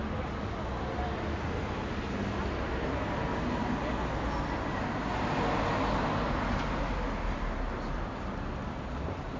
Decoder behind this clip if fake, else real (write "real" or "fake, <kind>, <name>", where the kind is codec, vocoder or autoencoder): real